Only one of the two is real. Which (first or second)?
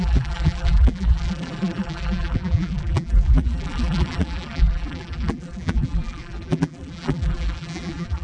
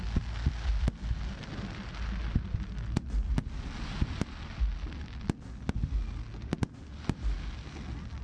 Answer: second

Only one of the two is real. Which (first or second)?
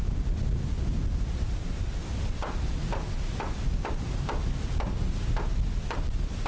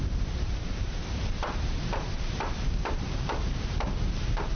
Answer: first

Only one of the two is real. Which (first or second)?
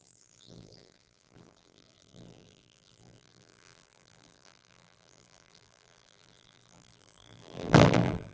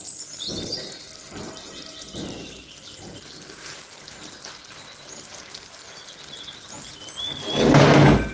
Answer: second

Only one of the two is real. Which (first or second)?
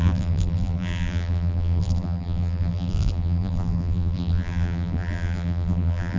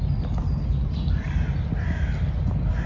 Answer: second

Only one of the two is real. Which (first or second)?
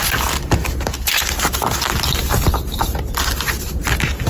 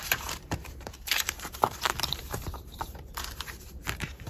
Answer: first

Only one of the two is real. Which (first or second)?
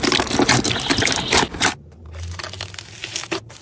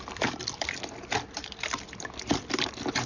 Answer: first